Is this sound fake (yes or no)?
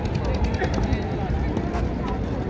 no